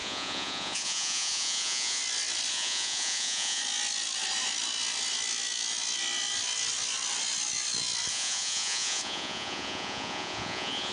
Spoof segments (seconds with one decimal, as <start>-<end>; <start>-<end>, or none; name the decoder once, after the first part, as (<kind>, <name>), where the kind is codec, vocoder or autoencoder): 0.0-2.0 (vocoder, Vocos); 2.5-3.6; 8.1-10.9